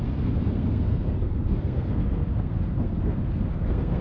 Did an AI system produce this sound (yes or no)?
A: yes